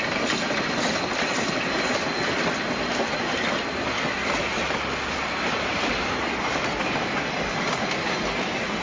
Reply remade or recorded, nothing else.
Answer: recorded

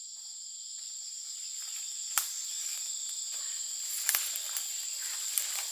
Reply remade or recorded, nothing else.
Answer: recorded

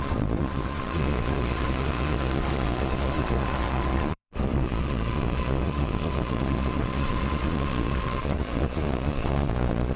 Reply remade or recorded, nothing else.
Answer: remade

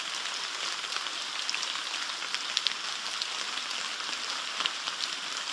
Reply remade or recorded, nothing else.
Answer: recorded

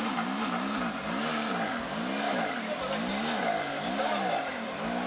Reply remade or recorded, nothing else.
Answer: recorded